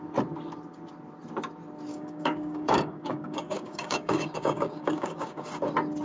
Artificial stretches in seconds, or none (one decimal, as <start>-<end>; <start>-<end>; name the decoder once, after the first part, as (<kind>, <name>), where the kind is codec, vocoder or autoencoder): 1.9-5.5 (codec, DAC)